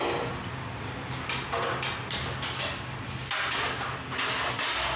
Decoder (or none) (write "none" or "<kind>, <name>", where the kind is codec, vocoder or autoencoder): none